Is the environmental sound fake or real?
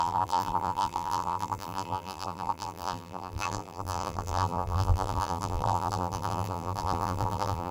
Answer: fake